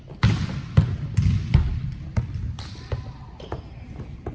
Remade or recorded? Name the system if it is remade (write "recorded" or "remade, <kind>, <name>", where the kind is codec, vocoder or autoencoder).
recorded